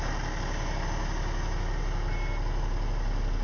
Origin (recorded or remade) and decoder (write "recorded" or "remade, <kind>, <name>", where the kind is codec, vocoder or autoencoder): recorded